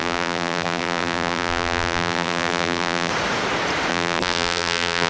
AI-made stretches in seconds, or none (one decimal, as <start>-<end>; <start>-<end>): 0.0-3.1; 3.9-5.1